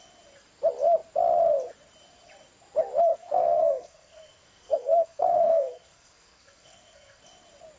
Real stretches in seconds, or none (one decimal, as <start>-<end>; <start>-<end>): 0.0-3.1; 7.2-7.8